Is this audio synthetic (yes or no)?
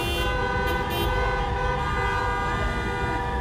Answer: no